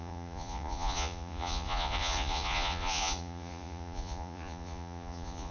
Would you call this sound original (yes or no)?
no